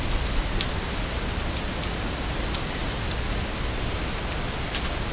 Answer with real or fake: real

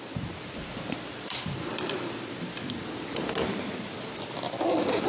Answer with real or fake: real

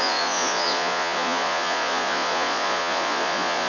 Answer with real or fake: fake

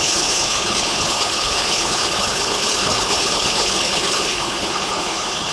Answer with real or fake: fake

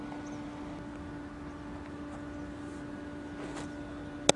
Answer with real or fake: real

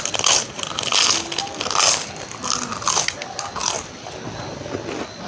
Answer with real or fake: real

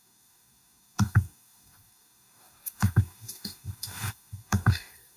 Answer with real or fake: fake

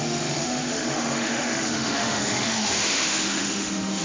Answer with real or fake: fake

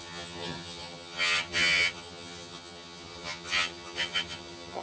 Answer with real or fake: fake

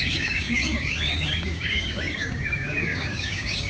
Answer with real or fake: fake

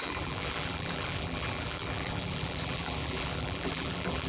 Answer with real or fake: fake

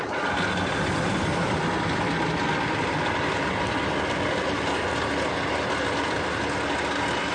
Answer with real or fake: real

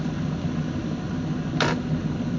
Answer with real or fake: real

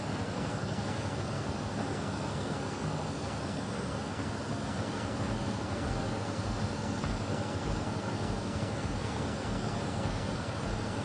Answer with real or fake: fake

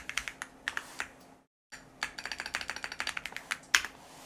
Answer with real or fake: real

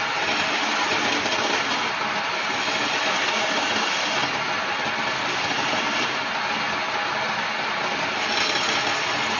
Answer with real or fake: real